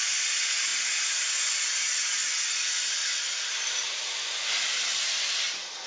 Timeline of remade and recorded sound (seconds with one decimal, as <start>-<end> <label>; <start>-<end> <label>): 0.0-5.9 recorded